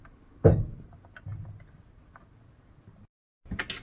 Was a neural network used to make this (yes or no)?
no